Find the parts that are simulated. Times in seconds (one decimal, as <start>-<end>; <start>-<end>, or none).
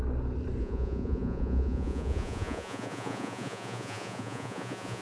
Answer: 0.6-5.0